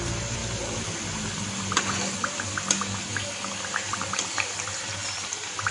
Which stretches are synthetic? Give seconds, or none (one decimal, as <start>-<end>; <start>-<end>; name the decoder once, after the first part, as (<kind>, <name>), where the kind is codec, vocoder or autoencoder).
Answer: 3.1-3.6 (codec, DAC)